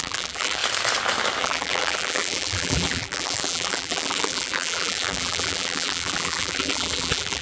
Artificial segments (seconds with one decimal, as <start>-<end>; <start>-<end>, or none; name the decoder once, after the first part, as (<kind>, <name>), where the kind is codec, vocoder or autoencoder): 0.0-0.6 (vocoder, BigVGAN v2); 1.4-7.4